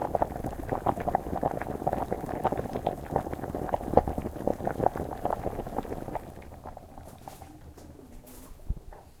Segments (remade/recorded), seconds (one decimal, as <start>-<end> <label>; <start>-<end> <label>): 0.0-9.2 recorded